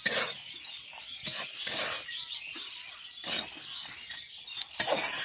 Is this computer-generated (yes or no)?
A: no